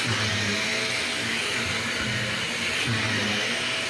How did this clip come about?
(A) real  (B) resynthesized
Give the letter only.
A